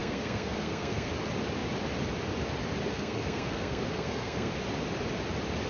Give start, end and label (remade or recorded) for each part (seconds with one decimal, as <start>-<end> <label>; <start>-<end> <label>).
0.0-1.1 remade; 1.1-2.9 recorded; 2.9-4.5 remade; 4.5-5.7 recorded